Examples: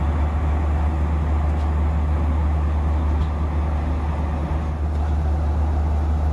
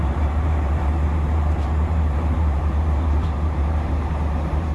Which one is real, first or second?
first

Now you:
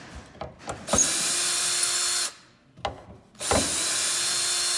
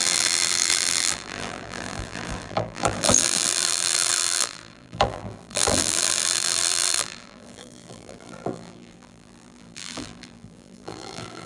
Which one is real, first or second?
first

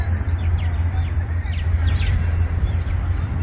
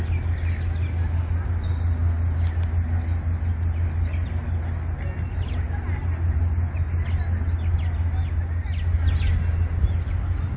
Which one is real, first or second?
second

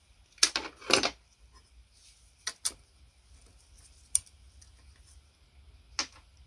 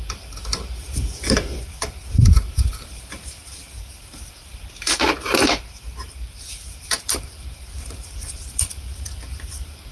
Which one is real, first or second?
first